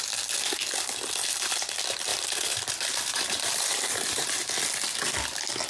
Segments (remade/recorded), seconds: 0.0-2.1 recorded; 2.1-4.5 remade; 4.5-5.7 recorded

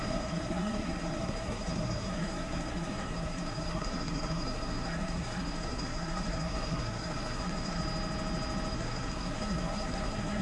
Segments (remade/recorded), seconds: 0.0-7.8 remade; 7.8-8.7 recorded; 8.7-10.4 remade

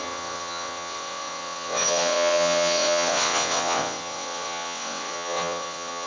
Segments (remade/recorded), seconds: 0.0-6.1 remade

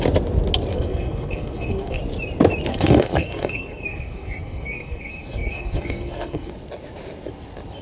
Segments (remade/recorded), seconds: 0.0-0.7 recorded; 0.7-2.0 remade; 2.0-2.7 recorded; 2.7-6.5 remade; 6.5-7.8 recorded

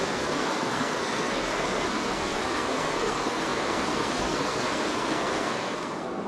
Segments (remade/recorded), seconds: 0.0-6.3 remade

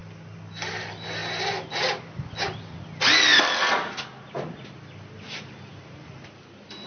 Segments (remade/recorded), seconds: 0.0-6.9 recorded

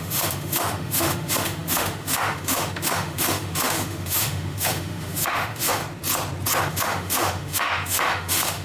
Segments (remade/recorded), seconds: 0.0-5.8 remade; 5.8-6.7 recorded; 6.7-8.6 remade

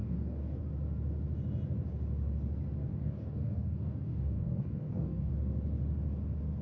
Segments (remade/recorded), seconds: 0.0-0.6 remade; 0.6-2.9 recorded; 2.9-5.3 remade; 5.3-6.6 recorded